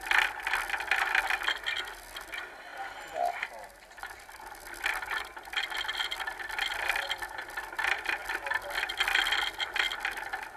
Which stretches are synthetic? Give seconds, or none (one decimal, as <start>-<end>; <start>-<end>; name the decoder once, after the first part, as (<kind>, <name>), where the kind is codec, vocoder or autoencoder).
none